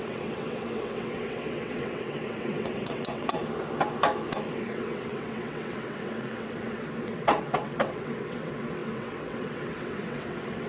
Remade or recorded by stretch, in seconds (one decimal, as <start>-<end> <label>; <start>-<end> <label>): 0.0-3.4 remade; 3.4-4.5 recorded; 4.5-10.7 remade